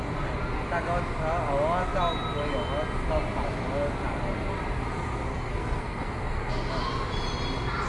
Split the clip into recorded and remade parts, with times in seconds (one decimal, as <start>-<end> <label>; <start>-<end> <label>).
0.0-5.3 recorded; 5.3-6.5 remade; 6.5-7.9 recorded